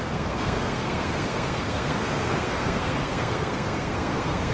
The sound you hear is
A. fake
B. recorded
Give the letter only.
A